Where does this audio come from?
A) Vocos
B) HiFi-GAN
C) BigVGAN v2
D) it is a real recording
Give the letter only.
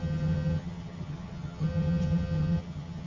B